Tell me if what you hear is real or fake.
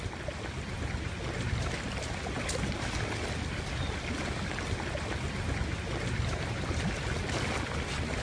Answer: real